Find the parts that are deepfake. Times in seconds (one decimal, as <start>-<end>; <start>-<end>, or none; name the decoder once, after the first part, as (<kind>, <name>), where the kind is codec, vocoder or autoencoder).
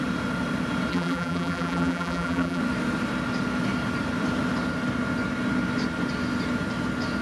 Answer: 0.9-2.6 (vocoder, BigVGAN v2)